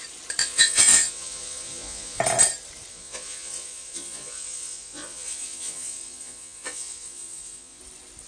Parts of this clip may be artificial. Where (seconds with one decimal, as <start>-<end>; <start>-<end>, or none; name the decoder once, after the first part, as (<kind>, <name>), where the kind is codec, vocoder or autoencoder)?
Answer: 0.4-2.2 (vocoder, Vocos); 2.9-7.8